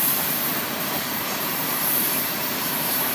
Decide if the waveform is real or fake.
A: fake